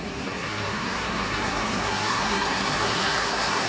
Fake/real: fake